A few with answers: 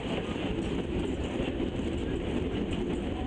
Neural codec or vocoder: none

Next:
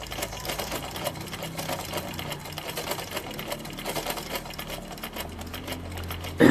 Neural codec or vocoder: none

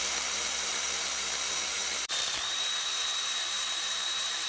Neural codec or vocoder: vocoder, BigVGAN v2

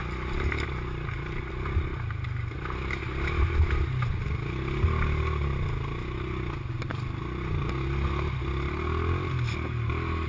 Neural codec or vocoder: none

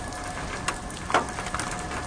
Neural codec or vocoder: none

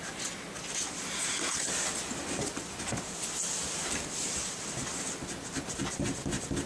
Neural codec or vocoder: none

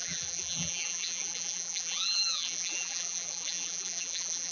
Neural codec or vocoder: vocoder, BigVGAN v2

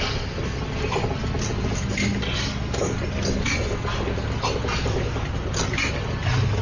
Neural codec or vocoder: none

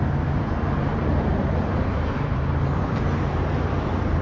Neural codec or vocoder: vocoder, BigVGAN v2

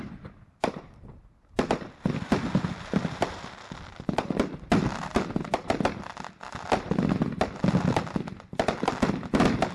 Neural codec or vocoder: none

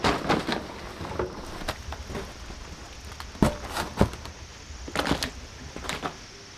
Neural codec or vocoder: none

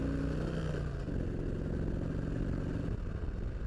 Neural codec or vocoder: none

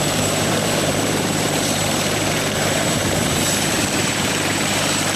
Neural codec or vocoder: vocoder, BigVGAN v2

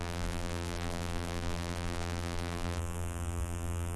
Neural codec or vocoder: vocoder, BigVGAN v2